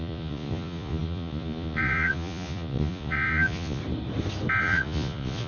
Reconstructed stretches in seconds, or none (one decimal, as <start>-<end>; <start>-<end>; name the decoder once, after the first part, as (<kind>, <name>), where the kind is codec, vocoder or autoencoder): 0.0-3.8 (vocoder, Vocos); 4.6-5.5